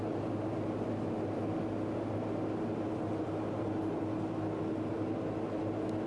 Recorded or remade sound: recorded